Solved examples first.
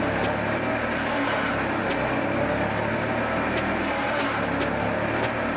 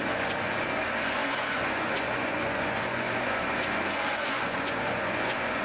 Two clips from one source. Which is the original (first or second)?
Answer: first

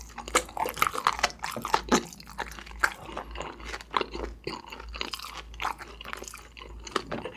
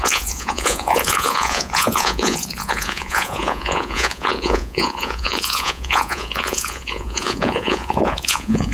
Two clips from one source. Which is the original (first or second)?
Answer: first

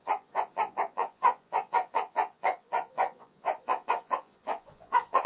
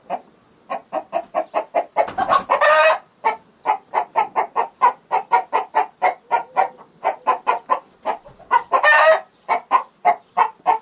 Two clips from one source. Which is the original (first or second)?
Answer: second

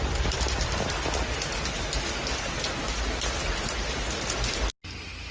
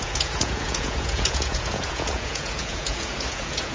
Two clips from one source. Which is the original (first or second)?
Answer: first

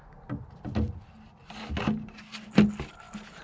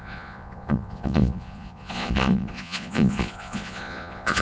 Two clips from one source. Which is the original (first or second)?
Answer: first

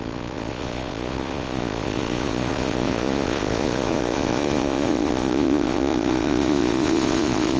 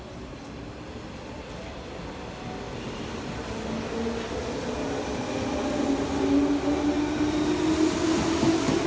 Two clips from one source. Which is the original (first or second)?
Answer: second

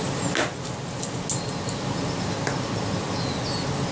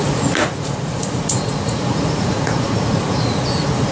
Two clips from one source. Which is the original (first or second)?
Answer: first